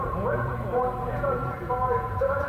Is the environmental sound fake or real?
fake